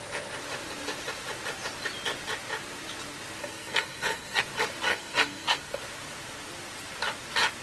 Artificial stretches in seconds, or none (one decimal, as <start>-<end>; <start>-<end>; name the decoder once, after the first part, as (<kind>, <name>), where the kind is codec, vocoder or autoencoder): 3.4-4.4 (codec, SNAC); 4.9-5.8